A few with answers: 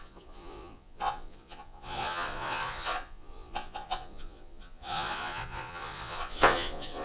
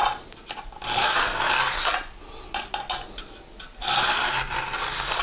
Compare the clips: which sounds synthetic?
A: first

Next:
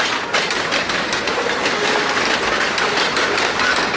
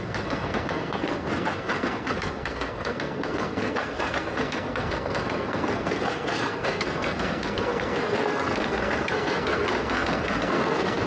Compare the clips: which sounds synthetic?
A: second